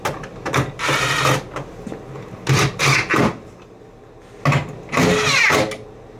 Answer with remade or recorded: recorded